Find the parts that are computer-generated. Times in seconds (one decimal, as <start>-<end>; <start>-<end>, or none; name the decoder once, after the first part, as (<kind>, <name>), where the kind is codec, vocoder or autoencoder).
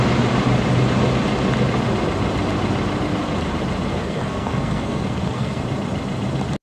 3.9-5.6 (codec, SNAC)